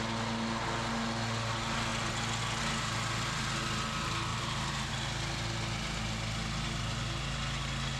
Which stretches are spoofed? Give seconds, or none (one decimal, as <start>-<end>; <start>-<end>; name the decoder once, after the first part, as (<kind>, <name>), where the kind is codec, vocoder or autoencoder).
4.3-4.9 (vocoder, BigVGAN v2)